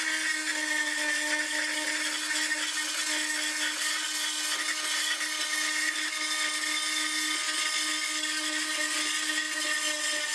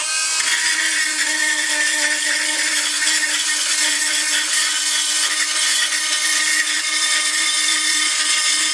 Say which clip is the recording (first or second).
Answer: first